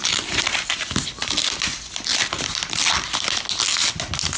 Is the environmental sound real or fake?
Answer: real